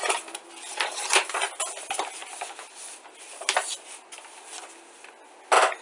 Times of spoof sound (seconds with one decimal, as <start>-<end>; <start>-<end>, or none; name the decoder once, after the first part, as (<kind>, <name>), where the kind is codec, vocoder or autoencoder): none